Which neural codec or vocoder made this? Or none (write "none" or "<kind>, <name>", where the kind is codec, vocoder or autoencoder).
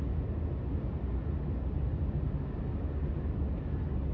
none